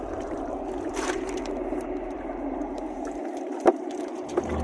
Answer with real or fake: fake